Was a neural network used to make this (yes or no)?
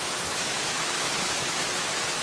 yes